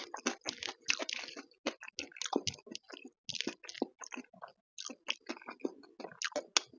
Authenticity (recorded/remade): recorded